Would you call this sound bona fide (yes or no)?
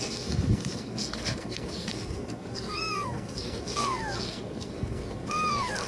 no